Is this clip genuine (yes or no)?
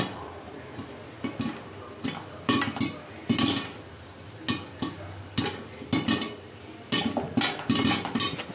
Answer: yes